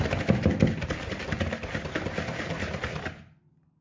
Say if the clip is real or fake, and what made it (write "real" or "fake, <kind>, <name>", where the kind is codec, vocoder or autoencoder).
real